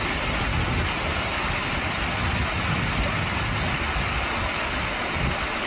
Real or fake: real